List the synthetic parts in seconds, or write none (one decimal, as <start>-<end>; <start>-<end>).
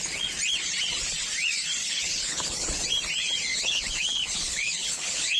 1.8-2.8; 3.5-5.4